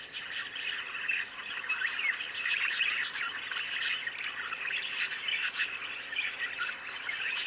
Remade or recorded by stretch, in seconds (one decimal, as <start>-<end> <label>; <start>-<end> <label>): 0.0-3.0 remade; 3.0-6.2 recorded; 6.2-7.5 remade